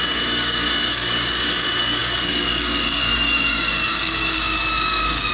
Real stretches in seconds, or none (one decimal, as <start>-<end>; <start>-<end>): none